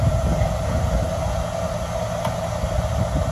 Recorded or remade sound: recorded